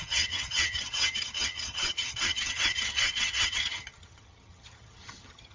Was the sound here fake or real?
fake